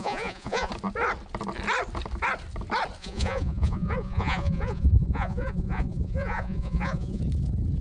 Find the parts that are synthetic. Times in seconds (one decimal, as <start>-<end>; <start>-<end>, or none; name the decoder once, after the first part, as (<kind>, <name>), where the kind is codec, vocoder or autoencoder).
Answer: 0.0-0.7 (vocoder, Vocos); 3.0-7.2